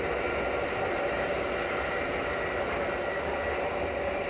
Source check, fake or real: real